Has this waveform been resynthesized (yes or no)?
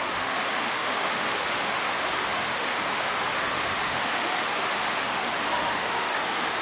yes